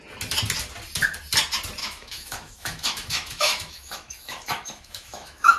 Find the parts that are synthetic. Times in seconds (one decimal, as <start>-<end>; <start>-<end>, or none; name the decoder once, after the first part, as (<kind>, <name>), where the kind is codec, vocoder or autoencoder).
1.8-5.6 (autoencoder, DAC-VAE)